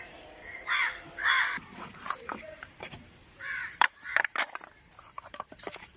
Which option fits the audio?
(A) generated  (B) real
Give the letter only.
A